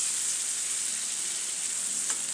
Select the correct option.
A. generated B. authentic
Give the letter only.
B